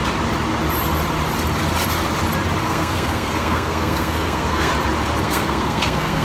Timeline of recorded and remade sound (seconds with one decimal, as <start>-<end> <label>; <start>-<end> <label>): 0.0-2.6 recorded; 2.6-4.7 remade; 4.7-5.2 recorded; 5.2-6.2 remade